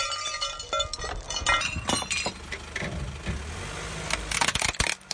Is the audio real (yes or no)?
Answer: yes